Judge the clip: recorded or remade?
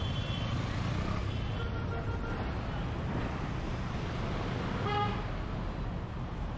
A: recorded